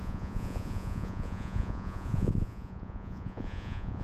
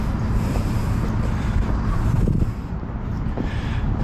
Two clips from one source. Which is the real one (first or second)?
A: second